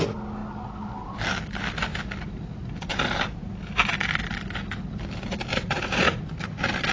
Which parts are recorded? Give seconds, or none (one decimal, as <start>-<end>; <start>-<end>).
0.0-5.5; 6.2-6.9